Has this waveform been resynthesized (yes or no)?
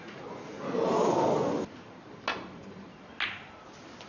no